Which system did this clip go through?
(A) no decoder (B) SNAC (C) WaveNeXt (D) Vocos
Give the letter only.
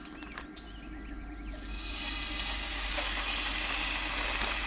A